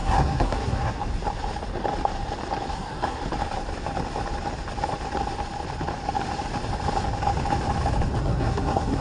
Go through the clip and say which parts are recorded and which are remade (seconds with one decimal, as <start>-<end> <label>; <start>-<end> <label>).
0.0-1.0 remade; 1.0-2.7 recorded; 2.7-3.2 remade; 3.2-8.2 recorded; 8.2-9.0 remade